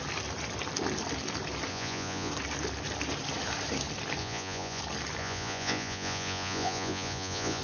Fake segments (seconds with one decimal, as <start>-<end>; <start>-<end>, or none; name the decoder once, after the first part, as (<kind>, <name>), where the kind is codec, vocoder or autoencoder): 1.7-2.3 (vocoder, Vocos); 4.2-4.8; 5.2-7.6